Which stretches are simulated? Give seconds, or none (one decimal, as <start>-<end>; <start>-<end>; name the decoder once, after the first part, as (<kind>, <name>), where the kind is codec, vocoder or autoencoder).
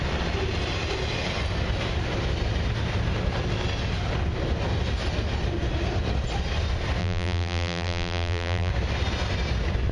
7.0-8.7 (vocoder, BigVGAN v2)